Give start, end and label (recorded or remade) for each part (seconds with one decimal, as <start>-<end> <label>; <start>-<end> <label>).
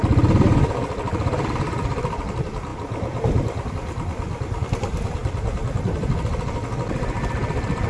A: 0.0-7.9 recorded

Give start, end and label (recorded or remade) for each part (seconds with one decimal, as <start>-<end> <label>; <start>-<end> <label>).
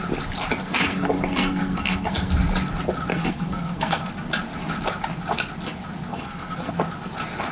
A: 0.0-0.6 recorded; 0.6-2.3 remade; 2.3-3.1 recorded; 3.1-4.1 remade; 4.1-6.1 recorded; 6.1-6.7 remade; 6.7-7.5 recorded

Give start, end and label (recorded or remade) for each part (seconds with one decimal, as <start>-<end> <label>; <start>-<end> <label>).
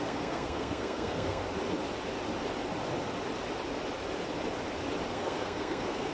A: 0.0-1.4 remade; 1.4-5.1 recorded; 5.1-6.1 remade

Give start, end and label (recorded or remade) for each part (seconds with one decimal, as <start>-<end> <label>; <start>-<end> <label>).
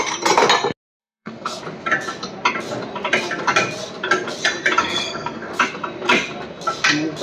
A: 0.0-1.0 recorded; 1.0-1.6 remade; 1.6-4.8 recorded; 4.8-5.6 remade; 5.6-7.2 recorded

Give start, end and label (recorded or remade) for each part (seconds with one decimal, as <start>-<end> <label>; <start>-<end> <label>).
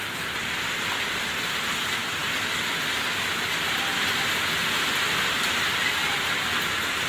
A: 0.0-7.1 recorded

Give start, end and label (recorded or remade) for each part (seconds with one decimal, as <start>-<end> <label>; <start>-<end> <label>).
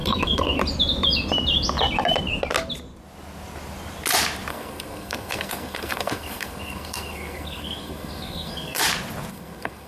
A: 0.0-0.6 remade; 0.6-4.5 recorded; 4.5-8.8 remade; 8.8-9.3 recorded; 9.3-9.9 remade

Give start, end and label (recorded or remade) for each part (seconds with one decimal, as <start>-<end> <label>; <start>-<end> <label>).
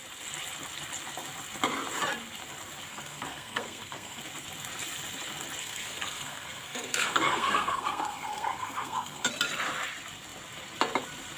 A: 0.0-2.9 recorded; 2.9-4.2 remade; 4.2-5.6 recorded; 5.6-9.3 remade; 9.3-11.4 recorded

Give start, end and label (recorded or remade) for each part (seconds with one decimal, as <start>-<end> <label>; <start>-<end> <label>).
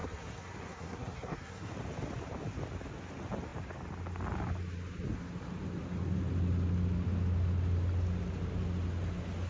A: 0.0-1.7 remade; 1.7-9.5 recorded